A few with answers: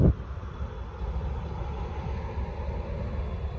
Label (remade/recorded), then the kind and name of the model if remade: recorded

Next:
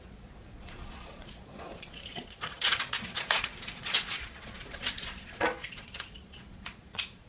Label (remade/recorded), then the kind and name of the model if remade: remade, vocoder, Vocos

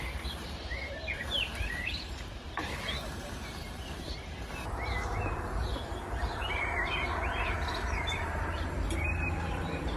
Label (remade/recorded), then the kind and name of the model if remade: remade, vocoder, BigVGAN v2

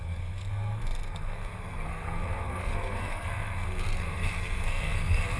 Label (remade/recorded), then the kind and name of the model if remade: remade, codec, SNAC